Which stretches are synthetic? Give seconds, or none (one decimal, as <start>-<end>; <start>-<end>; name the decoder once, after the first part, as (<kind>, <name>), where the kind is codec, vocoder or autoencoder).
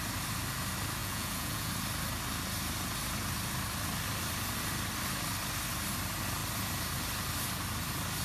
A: 1.0-1.7 (vocoder, Vocos)